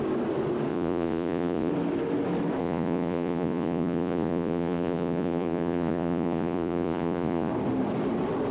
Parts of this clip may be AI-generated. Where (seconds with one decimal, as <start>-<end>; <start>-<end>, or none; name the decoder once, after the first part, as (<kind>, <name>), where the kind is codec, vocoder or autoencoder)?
0.7-1.7 (vocoder, Vocos); 2.6-7.5

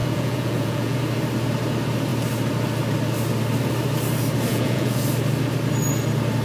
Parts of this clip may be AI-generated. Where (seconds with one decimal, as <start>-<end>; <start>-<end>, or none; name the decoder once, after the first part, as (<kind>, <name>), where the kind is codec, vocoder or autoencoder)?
0.0-1.0 (vocoder, Vocos); 4.5-5.0